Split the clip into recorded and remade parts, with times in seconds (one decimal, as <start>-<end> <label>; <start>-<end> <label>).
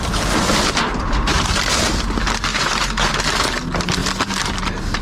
0.0-0.9 recorded; 0.9-1.6 remade; 1.6-2.5 recorded; 2.5-3.1 remade; 3.1-5.0 recorded